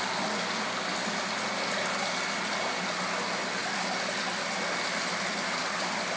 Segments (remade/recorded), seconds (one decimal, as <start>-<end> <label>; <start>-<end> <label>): 0.0-6.2 recorded